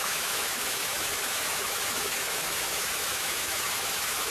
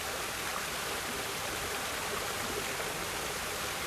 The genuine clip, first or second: second